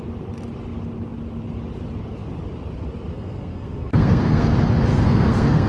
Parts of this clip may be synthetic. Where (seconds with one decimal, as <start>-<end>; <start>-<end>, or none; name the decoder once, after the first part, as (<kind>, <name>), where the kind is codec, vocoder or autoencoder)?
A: 3.1-4.5 (codec, SNAC); 4.9-5.7